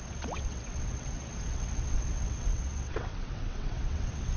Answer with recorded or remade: remade